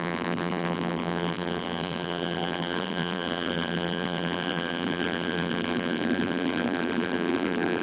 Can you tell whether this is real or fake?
fake